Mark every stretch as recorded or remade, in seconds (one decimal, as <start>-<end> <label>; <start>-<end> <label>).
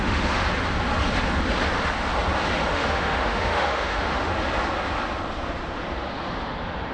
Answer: 0.0-0.4 remade; 0.4-2.7 recorded; 2.7-4.3 remade; 4.3-6.9 recorded